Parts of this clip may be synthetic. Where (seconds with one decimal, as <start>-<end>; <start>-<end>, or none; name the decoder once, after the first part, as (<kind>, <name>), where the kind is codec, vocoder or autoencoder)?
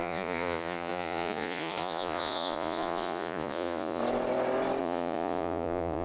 0.0-4.0 (vocoder, Vocos); 4.8-6.0